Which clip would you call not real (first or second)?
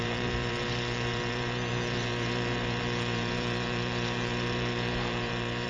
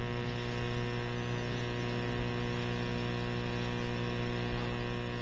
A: first